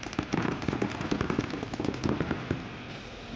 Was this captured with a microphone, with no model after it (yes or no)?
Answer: yes